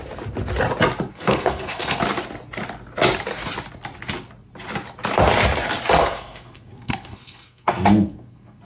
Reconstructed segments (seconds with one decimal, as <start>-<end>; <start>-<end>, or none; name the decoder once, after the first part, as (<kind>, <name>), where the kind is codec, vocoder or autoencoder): 1.1-2.0 (codec, SNAC); 6.0-8.6

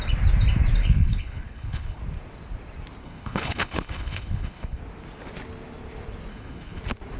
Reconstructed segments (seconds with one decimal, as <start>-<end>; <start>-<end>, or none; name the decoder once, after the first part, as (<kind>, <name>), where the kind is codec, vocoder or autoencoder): 0.8-2.0 (codec, HILCodec); 3.0-4.8; 6.3-6.8